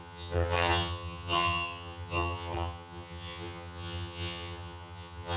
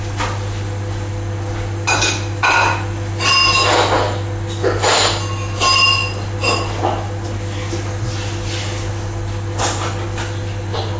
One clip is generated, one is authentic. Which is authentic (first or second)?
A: second